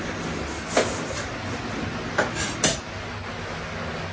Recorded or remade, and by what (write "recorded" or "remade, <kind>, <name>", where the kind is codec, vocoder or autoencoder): recorded